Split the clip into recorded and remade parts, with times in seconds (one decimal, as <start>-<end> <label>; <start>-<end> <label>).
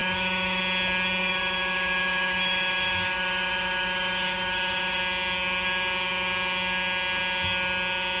0.0-0.6 remade; 0.6-1.2 recorded; 1.2-5.0 remade; 5.0-8.2 recorded